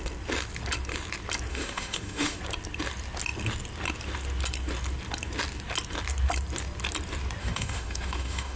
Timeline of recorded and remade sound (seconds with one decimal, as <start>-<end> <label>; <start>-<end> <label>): 0.0-1.5 recorded; 1.5-2.4 remade; 2.4-7.4 recorded; 7.4-8.6 remade